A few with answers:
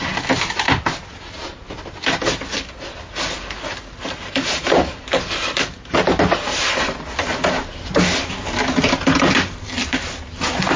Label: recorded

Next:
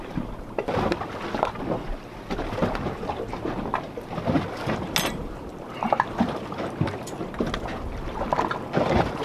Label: recorded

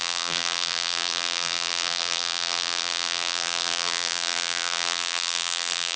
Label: remade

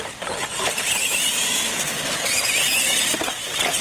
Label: remade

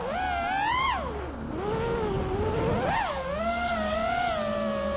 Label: recorded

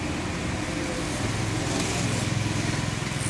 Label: recorded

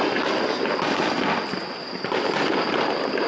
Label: recorded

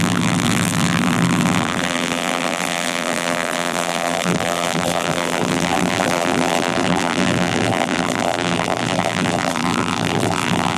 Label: remade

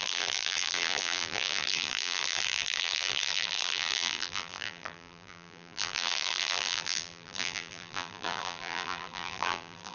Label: remade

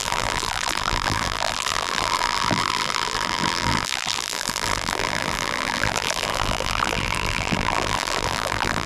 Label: remade